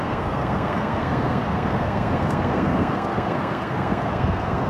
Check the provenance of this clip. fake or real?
fake